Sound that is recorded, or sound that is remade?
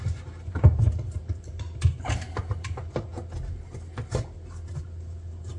recorded